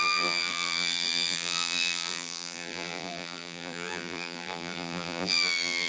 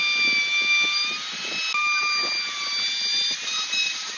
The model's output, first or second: first